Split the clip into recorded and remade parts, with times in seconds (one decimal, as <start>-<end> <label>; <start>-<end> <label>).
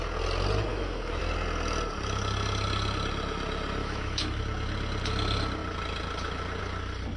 0.0-0.7 recorded; 0.7-1.2 remade; 1.2-3.8 recorded; 3.8-4.4 remade; 4.4-7.2 recorded